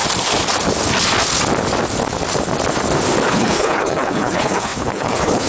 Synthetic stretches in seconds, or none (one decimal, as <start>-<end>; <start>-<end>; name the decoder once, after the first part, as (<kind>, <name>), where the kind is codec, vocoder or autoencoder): 3.3-5.5 (codec, HILCodec)